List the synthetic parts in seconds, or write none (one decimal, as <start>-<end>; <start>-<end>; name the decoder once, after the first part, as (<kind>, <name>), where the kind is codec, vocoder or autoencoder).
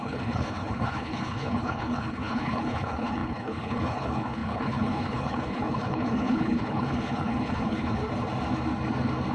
0.0-8.0 (codec, HILCodec)